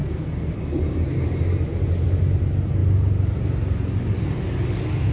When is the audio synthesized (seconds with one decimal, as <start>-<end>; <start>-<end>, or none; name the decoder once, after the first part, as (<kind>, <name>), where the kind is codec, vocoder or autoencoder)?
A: 0.0-0.5 (codec, SNAC)